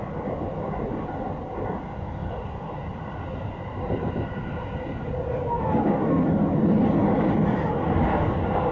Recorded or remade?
recorded